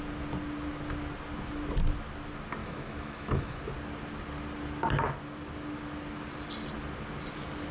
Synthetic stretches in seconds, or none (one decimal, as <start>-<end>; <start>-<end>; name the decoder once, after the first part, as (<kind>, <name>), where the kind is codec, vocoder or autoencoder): 2.6-3.6 (autoencoder, DAC-VAE)